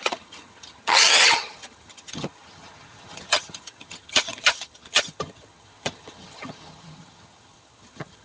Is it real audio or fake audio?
fake